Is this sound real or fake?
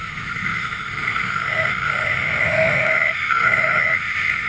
fake